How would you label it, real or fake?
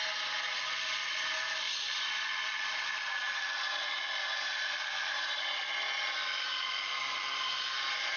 real